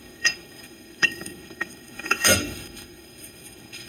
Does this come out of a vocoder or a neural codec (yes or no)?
yes